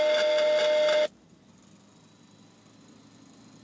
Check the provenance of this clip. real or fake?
real